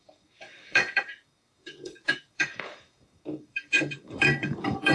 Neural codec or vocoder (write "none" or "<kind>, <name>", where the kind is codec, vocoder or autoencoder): codec, DAC